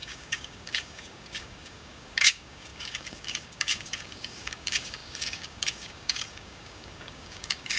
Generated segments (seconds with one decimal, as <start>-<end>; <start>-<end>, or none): 0.0-7.8